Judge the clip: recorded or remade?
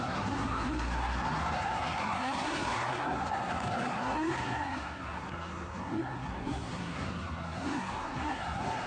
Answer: remade